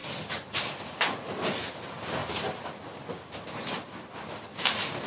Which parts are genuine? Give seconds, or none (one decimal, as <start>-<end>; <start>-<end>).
0.0-5.1